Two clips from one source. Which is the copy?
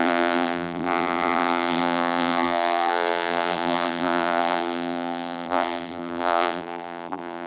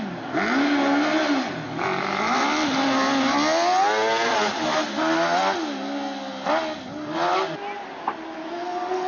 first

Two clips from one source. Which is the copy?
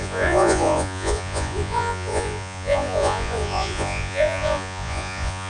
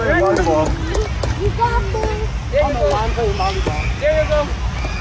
first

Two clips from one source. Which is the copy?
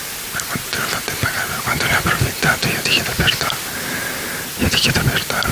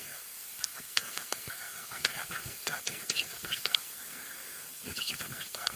second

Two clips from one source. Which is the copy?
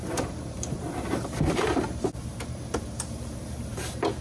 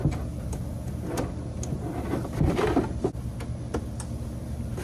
first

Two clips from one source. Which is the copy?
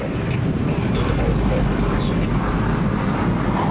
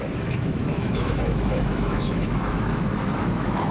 second